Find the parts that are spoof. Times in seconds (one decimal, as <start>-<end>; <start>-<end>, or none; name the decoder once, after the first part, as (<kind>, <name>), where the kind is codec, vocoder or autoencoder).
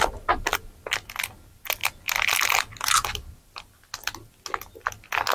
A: none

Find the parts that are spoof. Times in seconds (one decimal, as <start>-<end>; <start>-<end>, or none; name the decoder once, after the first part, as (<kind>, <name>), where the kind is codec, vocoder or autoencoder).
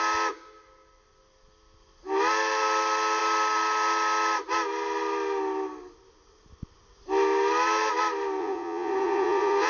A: 8.4-9.7 (vocoder, Vocos)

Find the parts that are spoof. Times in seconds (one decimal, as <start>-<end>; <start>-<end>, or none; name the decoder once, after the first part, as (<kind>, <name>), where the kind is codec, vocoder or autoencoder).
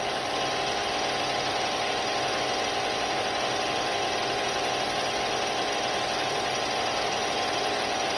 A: 0.0-0.8 (vocoder, BigVGAN v2); 3.2-8.2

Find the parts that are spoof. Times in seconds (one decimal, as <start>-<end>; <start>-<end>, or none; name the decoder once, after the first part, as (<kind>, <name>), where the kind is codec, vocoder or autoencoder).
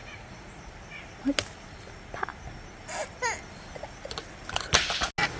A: 0.0-0.7 (vocoder, Vocos)